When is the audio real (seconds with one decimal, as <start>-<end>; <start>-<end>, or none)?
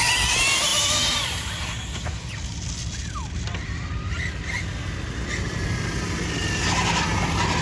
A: 0.0-7.6